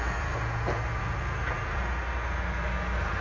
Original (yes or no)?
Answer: yes